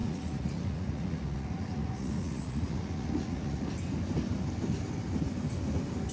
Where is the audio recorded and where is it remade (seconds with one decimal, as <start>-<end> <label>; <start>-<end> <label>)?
0.0-3.7 remade; 3.7-6.1 recorded